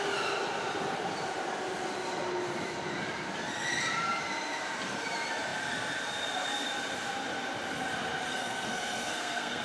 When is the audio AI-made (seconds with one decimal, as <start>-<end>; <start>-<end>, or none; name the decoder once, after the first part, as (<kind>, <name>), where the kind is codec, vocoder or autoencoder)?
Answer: 8.3-9.6 (codec, SNAC)